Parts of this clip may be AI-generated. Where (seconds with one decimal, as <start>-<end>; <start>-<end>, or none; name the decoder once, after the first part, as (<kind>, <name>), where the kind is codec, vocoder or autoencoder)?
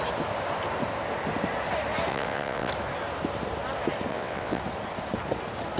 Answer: 2.1-2.7 (vocoder, WaveNeXt); 4.1-4.6